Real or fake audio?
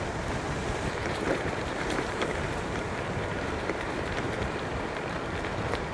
fake